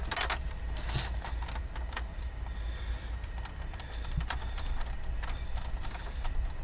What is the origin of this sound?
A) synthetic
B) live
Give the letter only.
B